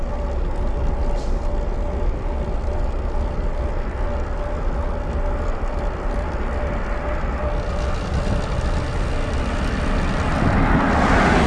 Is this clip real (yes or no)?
yes